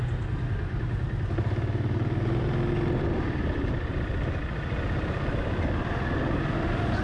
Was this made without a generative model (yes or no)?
yes